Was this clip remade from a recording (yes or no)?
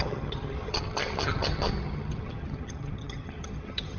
yes